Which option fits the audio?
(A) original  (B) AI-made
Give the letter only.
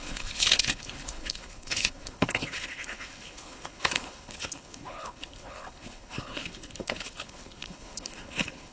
B